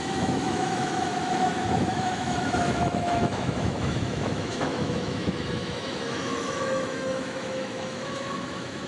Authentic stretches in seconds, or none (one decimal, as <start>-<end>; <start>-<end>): none